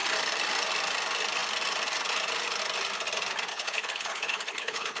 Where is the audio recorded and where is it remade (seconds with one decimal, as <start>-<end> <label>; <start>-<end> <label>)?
0.0-3.5 recorded; 3.5-5.0 remade